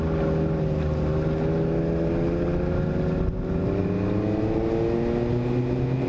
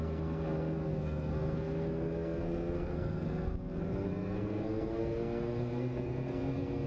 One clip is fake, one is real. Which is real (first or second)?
first